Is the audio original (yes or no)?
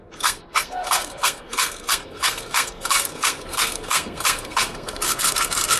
no